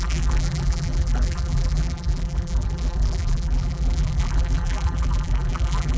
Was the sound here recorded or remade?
remade